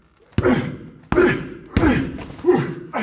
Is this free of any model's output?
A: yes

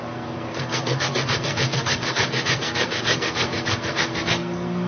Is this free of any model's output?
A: no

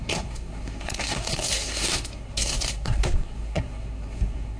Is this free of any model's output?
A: no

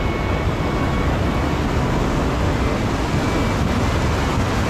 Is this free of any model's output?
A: yes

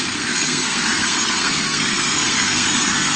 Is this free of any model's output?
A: no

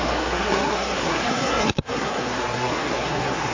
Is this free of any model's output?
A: no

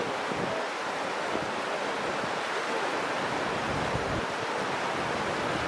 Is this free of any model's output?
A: yes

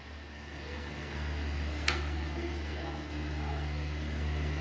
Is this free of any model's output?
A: no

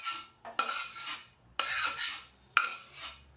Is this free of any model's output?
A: yes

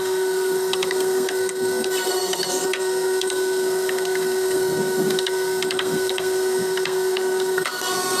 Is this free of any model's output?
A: no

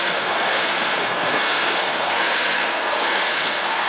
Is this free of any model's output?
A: no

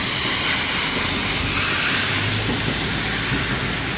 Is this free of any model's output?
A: yes